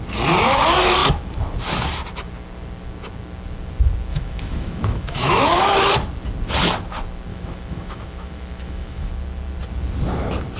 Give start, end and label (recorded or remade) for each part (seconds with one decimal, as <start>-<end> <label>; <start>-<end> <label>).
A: 0.0-4.1 recorded; 4.1-5.4 remade; 5.4-7.3 recorded; 7.3-9.1 remade; 9.1-10.6 recorded